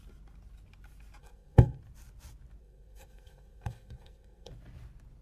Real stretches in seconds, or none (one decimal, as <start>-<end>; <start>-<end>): 0.0-1.2; 1.8-2.6; 4.5-5.2